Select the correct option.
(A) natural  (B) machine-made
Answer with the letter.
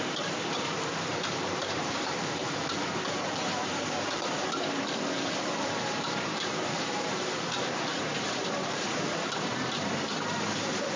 B